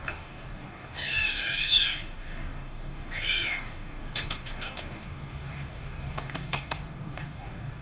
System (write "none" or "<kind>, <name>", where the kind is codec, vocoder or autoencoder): codec, DAC